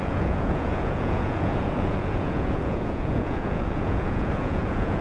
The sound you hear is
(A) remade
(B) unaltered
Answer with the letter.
A